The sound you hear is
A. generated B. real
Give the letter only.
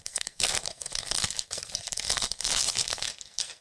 A